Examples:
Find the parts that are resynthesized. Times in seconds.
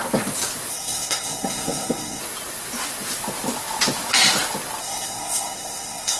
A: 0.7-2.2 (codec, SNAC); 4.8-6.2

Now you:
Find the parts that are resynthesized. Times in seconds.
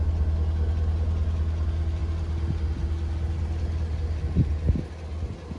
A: none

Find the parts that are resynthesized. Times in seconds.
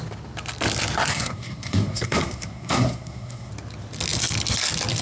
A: 1.1-3.5 (codec, SNAC)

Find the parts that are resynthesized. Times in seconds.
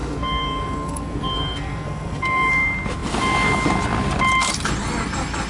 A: 0.0-2.5 (codec, SNAC)